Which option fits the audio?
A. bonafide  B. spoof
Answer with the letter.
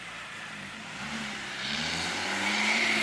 B